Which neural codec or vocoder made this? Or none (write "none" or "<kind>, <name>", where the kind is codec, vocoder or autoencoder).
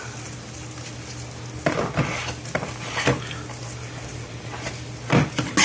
none